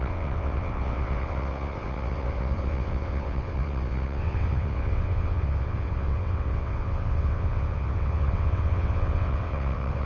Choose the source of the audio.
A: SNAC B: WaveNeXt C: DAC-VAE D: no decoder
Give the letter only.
B